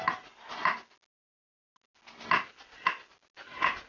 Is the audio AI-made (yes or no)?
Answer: no